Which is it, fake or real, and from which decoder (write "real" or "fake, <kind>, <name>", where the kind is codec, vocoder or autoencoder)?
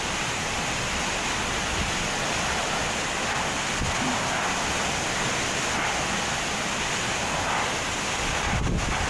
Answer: real